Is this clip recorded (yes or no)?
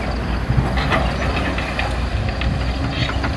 yes